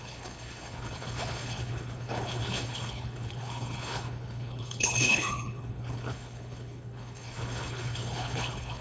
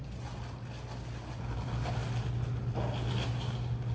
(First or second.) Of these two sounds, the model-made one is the first